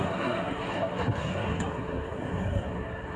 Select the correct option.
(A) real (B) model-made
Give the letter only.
B